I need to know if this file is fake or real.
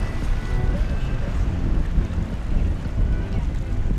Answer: real